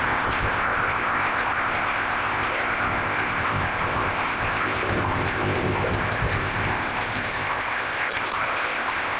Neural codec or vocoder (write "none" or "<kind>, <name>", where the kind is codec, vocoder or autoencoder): codec, ZipCodec